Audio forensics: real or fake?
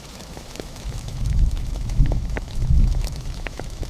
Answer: fake